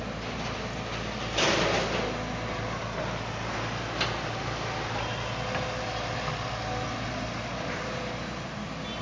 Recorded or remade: recorded